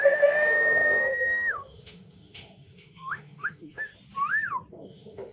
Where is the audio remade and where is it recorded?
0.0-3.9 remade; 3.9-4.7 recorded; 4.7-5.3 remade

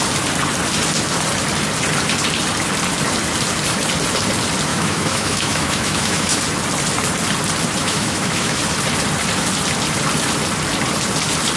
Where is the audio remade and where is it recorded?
0.0-4.7 recorded; 4.7-6.4 remade; 6.4-7.8 recorded; 7.8-8.6 remade; 8.6-11.6 recorded

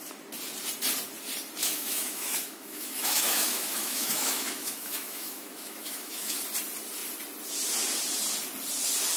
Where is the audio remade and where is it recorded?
0.0-1.6 recorded; 1.6-6.4 remade; 6.4-9.2 recorded